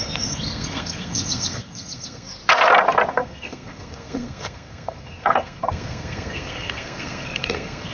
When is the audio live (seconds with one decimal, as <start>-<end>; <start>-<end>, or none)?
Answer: 2.4-3.1